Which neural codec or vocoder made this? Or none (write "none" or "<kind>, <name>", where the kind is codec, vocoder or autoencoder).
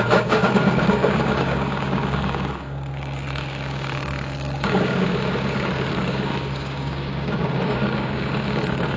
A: codec, DAC